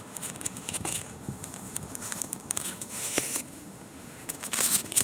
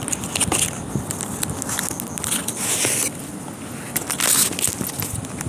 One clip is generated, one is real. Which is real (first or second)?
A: second